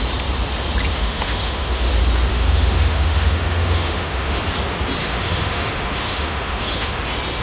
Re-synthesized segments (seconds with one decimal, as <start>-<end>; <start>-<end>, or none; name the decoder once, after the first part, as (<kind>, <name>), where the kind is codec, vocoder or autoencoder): 0.9-1.9 (autoencoder, DAC-VAE); 2.3-4.4; 5.0-7.0